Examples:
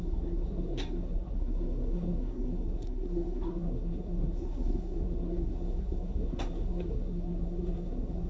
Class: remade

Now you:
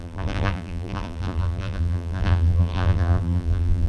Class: remade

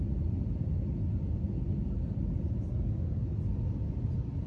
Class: recorded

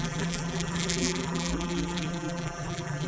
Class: remade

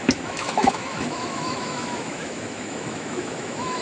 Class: remade